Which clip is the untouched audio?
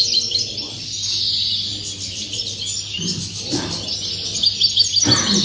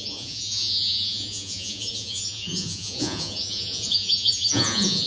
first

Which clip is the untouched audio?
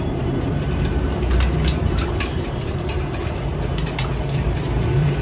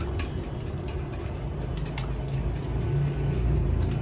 second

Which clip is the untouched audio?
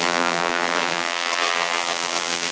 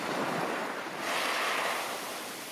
second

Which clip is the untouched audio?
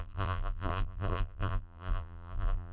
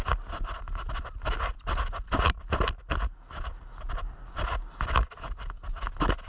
second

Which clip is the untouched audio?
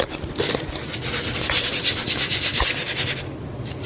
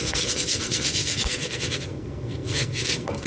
first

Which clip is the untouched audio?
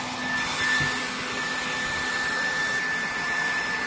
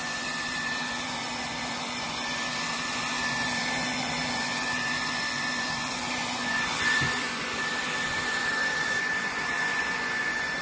first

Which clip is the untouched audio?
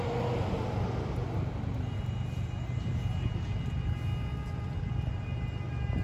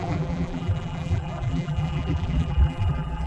first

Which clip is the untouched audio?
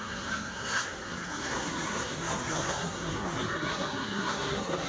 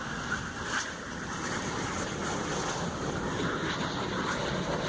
second